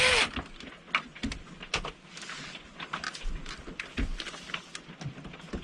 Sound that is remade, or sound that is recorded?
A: recorded